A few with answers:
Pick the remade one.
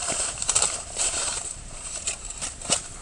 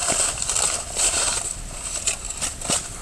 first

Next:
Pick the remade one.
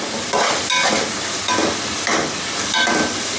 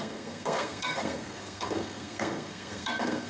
second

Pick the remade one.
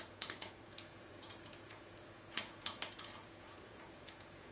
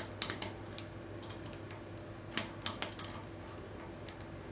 first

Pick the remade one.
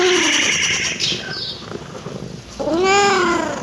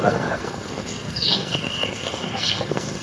second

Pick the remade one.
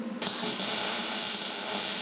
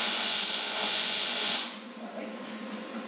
second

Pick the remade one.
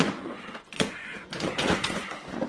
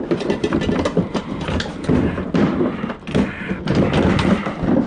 first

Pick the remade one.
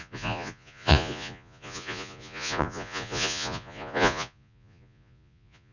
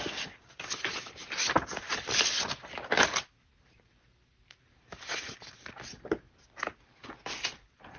first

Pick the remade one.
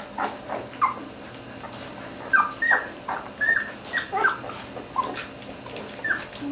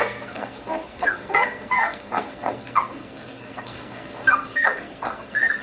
second